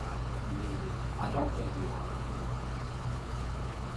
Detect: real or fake fake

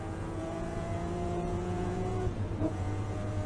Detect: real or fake fake